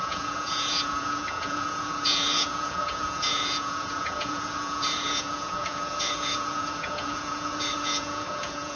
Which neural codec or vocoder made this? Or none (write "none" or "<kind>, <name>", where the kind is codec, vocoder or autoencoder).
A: vocoder, Vocos